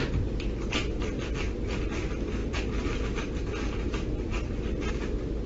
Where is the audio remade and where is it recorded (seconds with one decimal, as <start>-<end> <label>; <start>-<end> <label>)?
0.0-5.5 recorded